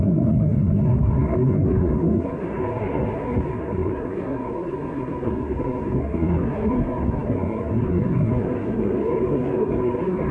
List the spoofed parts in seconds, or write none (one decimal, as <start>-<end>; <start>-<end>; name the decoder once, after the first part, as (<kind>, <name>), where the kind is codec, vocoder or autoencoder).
0.0-10.3 (codec, SNAC)